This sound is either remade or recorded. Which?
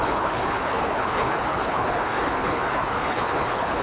remade